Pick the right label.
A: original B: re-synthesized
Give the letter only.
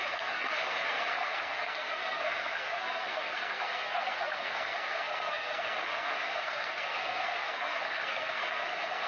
B